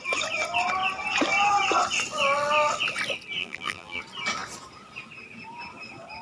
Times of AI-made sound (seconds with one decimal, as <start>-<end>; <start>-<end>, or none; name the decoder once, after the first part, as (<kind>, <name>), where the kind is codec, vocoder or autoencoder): 3.4-4.0 (vocoder, BigVGAN v2)